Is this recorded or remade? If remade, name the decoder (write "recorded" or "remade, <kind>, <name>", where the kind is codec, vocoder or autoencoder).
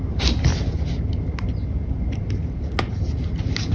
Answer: recorded